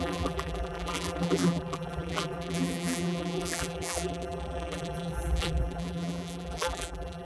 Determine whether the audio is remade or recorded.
remade